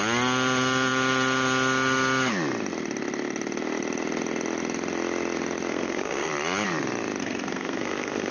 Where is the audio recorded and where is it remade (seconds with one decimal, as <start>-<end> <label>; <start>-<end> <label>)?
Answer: 0.0-5.7 recorded; 5.7-6.3 remade; 6.3-7.2 recorded; 7.2-8.3 remade